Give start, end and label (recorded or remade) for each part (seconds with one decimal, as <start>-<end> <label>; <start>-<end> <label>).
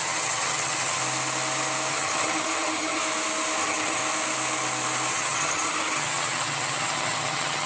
0.0-1.0 remade; 1.0-1.9 recorded; 1.9-3.0 remade; 3.0-3.6 recorded; 3.6-4.0 remade; 4.0-5.1 recorded; 5.1-7.7 remade